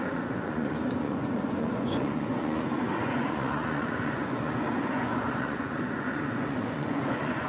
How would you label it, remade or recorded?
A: remade